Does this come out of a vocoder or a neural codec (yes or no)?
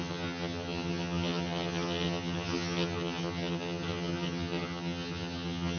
yes